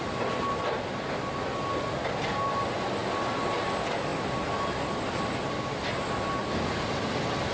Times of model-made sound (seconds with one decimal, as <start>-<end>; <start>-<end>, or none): none